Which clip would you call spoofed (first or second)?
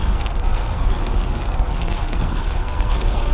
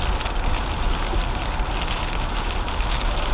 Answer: first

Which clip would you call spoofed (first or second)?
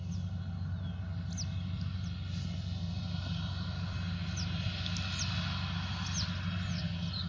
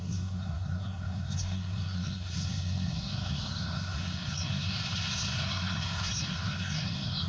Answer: second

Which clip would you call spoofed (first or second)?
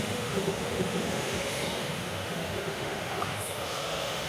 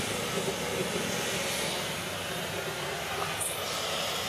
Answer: first